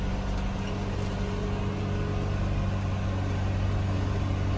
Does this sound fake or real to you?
real